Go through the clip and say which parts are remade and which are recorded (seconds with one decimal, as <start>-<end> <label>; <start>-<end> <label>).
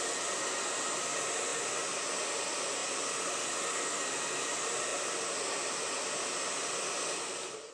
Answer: 0.0-7.7 recorded